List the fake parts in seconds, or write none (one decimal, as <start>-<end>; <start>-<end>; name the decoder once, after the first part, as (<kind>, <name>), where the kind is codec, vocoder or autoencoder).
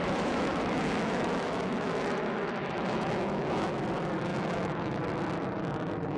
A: 0.0-3.7 (autoencoder, DAC-VAE); 4.3-5.0